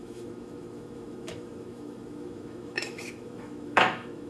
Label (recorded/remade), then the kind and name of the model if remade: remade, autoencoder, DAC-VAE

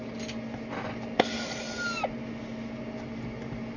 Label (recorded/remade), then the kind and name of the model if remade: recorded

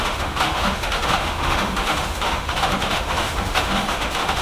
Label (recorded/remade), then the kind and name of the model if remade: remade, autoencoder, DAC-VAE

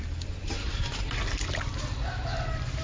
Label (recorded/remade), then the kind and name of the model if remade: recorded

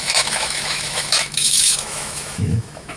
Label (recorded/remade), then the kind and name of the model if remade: remade, autoencoder, DAC-VAE